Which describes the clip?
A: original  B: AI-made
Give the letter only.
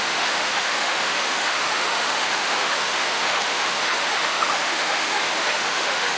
B